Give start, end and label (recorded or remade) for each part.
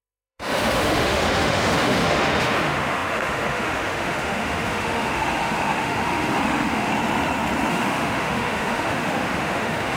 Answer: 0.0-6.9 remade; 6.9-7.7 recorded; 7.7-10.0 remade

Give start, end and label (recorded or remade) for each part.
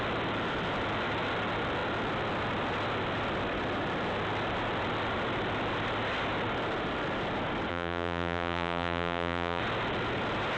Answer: 0.0-7.7 recorded; 7.7-9.6 remade; 9.6-10.6 recorded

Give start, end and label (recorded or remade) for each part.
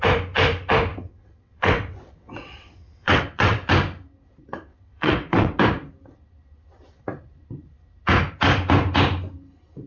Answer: 0.0-0.9 recorded; 0.9-3.7 remade; 3.7-4.7 recorded; 4.7-5.6 remade; 5.6-9.9 recorded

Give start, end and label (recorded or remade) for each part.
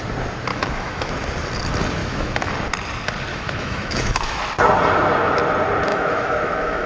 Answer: 0.0-0.5 recorded; 0.5-1.1 remade; 1.1-2.0 recorded; 2.0-2.5 remade; 2.5-3.3 recorded; 3.3-4.4 remade; 4.4-5.9 recorded; 5.9-6.9 remade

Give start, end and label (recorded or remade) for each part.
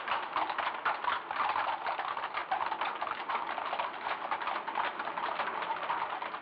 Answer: 0.0-6.4 recorded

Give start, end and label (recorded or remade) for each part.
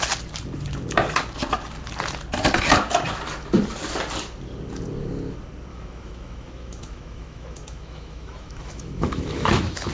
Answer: 0.0-5.7 recorded; 5.7-9.9 remade